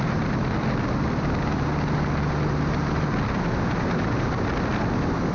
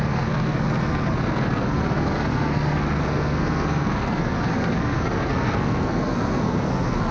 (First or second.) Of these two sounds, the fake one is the second